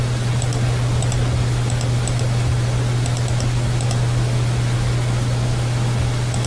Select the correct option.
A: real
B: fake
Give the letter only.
A